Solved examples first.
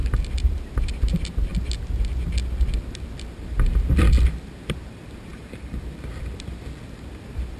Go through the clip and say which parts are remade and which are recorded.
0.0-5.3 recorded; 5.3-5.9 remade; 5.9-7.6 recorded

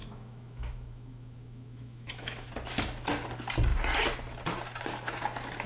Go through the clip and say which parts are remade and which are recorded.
0.0-2.5 remade; 2.5-5.7 recorded

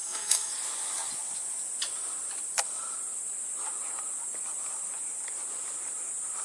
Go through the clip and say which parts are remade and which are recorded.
0.0-0.5 remade; 0.5-6.4 recorded

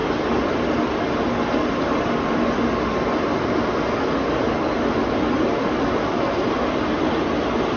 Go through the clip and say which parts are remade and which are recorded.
0.0-7.8 recorded

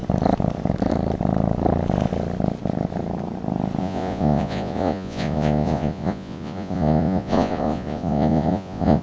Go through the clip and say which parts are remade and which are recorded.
0.0-3.8 recorded; 3.8-9.0 remade